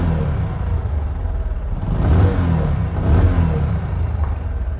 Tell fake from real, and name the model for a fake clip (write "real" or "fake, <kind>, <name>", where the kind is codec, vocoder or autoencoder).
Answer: real